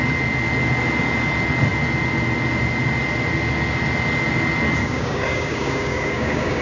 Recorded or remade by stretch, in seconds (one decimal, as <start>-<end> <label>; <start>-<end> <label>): 0.0-4.8 recorded; 4.8-6.6 remade

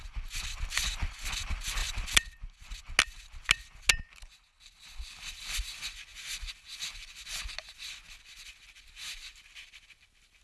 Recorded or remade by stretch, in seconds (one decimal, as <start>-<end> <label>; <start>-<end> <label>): 0.0-10.4 recorded